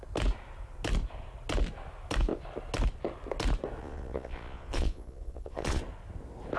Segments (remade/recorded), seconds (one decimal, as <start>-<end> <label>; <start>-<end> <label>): 0.0-3.8 recorded; 3.8-5.8 remade; 5.8-6.6 recorded